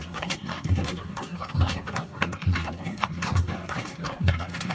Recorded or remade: remade